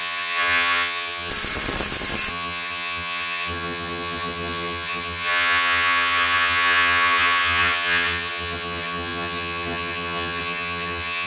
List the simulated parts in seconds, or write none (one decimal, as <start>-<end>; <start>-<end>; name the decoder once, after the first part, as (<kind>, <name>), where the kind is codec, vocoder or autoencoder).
0.0-1.3 (vocoder, HiFi-GAN); 2.3-11.3